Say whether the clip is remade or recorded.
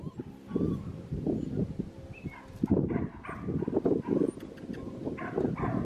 recorded